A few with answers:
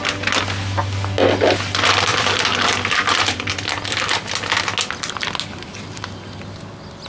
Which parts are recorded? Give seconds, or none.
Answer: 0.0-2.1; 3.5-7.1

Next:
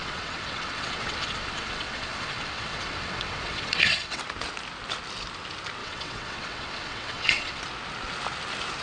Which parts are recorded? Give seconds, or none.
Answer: 4.2-5.8; 7.6-8.8

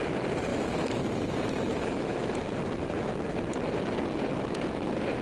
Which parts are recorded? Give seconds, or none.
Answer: 0.0-0.5; 1.0-1.7; 2.3-5.2